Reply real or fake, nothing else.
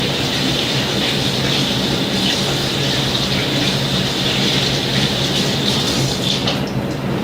real